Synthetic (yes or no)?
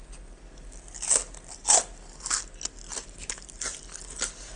no